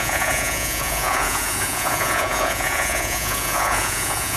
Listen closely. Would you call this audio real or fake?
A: fake